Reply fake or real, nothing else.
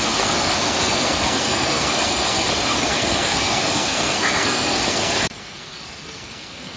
fake